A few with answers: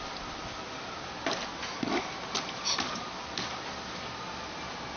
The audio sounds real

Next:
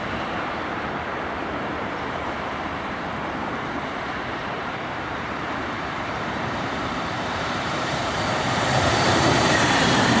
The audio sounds fake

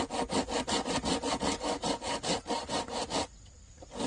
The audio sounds real